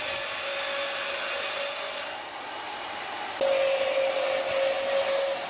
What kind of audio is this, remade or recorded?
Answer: recorded